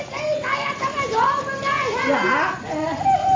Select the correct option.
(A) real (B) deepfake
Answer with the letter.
A